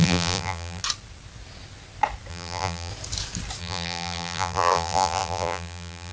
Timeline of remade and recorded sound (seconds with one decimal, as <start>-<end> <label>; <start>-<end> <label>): 0.0-0.8 remade; 0.8-2.3 recorded; 2.3-2.9 remade; 2.9-3.6 recorded; 3.6-6.1 remade